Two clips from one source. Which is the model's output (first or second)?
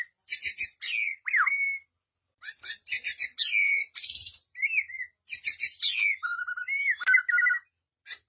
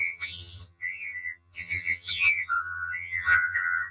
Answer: second